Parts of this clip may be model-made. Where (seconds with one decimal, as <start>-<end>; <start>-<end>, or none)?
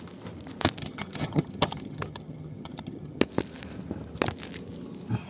0.8-3.2